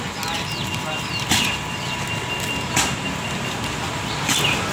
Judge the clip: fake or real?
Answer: real